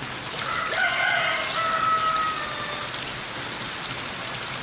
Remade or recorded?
recorded